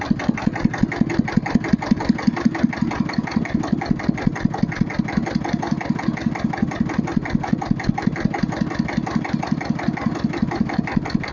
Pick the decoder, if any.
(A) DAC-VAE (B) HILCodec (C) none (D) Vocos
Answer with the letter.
C